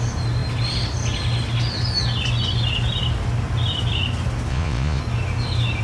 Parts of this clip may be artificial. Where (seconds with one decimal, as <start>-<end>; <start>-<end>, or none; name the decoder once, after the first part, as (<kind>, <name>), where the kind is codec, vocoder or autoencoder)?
4.5-5.0 (vocoder, Vocos)